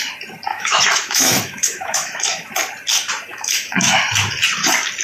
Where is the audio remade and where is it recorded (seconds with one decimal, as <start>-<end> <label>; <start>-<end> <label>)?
0.0-0.5 recorded; 0.5-2.5 remade; 2.5-3.3 recorded; 3.3-4.0 remade; 4.0-5.0 recorded